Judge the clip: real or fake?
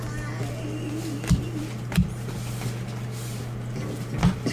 real